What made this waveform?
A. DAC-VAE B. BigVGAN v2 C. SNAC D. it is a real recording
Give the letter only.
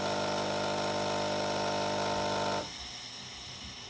D